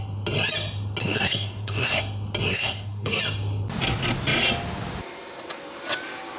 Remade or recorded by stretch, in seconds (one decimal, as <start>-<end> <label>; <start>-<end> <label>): 0.0-1.0 recorded; 1.0-2.0 remade; 2.0-2.5 recorded; 2.5-3.2 remade; 3.2-6.4 recorded